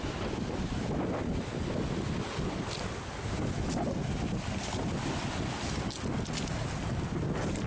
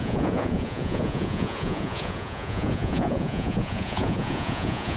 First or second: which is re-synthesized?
second